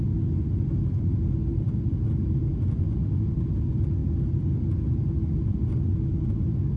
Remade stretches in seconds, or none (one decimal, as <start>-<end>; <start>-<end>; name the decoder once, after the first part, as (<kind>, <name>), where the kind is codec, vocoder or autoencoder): none

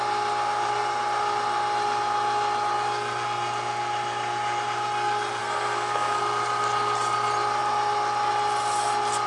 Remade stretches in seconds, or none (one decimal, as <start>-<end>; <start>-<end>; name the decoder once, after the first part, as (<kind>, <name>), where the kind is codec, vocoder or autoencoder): 5.4-6.2 (codec, SNAC)

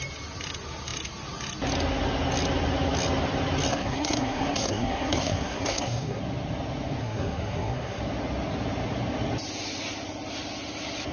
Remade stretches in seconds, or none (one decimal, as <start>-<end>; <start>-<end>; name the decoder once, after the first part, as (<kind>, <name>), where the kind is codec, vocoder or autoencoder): 3.7-6.2 (codec, SNAC); 7.0-8.0

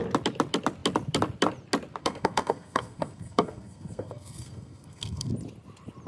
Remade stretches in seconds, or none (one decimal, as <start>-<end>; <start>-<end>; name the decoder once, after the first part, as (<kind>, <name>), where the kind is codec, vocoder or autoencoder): 2.0-5.3 (codec, SNAC)

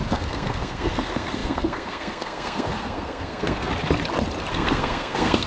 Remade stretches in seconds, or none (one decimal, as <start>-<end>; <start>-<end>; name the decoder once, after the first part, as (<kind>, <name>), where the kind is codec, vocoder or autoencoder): 0.0-3.7 (codec, SNAC); 4.5-5.5

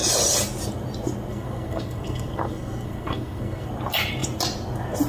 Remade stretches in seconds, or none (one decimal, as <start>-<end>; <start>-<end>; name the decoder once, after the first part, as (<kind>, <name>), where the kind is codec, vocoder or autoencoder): 1.3-3.7 (codec, SNAC)

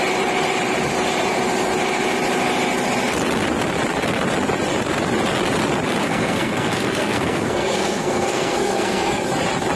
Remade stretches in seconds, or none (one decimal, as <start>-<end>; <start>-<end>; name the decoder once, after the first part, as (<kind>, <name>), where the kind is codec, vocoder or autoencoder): 6.0-9.2 (codec, SNAC)